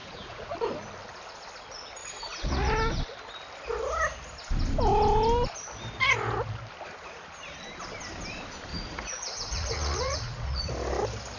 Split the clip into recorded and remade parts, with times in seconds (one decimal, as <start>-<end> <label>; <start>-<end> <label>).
0.0-0.5 remade; 0.5-2.0 recorded; 2.0-2.7 remade; 2.7-8.7 recorded; 8.7-10.7 remade; 10.7-11.4 recorded